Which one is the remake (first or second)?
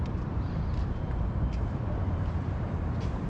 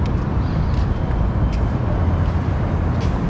first